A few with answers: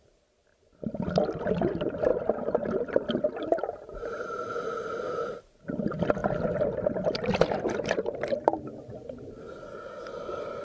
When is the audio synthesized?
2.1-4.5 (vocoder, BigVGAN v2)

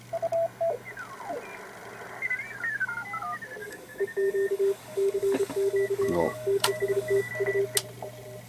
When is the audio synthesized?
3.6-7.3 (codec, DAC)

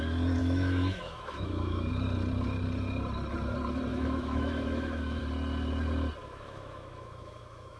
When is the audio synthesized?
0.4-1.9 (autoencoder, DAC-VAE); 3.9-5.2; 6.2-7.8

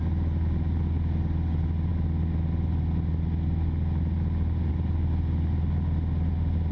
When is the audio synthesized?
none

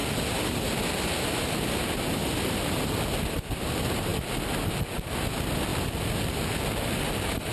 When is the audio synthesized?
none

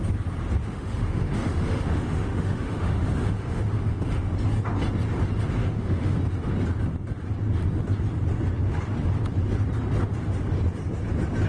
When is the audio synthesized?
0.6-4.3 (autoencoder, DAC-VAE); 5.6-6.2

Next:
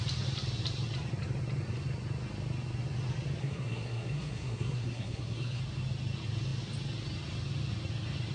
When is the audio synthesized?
3.4-5.6 (codec, SNAC)

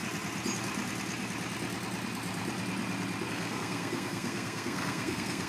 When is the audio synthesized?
3.3-5.5 (codec, SNAC)